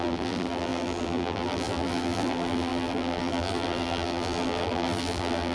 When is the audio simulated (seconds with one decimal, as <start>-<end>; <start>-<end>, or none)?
0.0-5.5